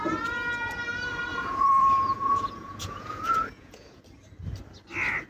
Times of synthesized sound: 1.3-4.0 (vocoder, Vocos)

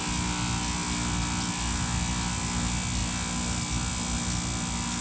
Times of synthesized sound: none

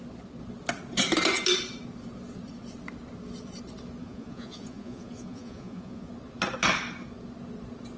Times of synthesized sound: 4.0-6.1 (vocoder, Vocos)